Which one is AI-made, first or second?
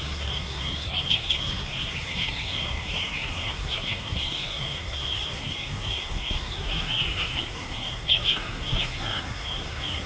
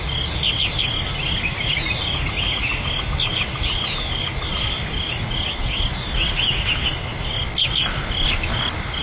first